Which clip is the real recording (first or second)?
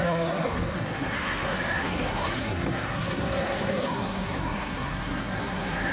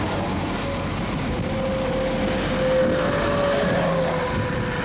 second